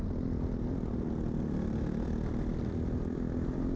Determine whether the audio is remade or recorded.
recorded